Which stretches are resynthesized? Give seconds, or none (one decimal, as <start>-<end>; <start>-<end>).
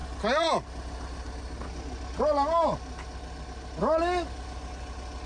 none